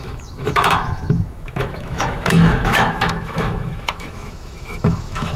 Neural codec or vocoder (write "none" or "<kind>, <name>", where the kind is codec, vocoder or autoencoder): autoencoder, DAC-VAE